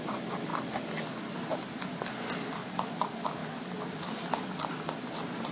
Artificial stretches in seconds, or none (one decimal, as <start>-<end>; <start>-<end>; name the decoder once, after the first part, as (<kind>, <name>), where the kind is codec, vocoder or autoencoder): none